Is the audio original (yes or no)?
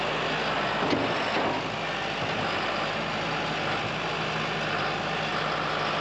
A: yes